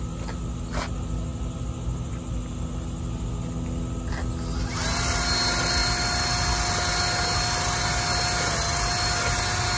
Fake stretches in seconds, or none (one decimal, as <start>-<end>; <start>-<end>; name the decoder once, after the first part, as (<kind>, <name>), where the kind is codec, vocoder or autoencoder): none